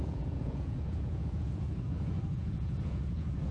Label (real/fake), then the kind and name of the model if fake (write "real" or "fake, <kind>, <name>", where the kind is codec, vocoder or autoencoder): fake, vocoder, Vocos